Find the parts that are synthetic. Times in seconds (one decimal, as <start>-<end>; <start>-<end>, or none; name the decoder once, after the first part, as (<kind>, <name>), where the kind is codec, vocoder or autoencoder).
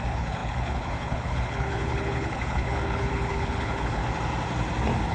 0.0-4.0 (codec, HILCodec)